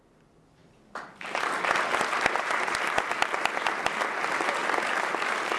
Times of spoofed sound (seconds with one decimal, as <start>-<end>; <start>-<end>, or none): none